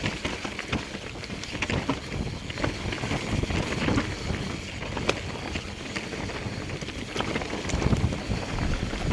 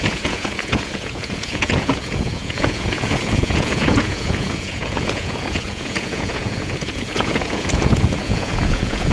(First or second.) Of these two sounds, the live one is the first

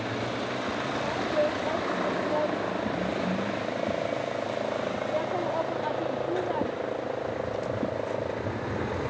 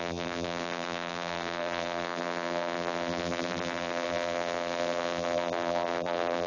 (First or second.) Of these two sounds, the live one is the first